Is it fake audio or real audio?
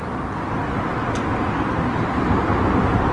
real